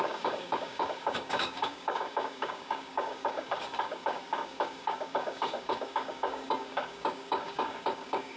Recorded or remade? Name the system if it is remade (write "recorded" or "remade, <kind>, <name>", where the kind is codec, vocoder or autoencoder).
remade, codec, DAC